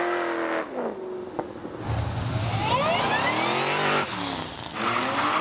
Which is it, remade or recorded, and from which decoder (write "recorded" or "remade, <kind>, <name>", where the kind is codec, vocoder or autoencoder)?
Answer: recorded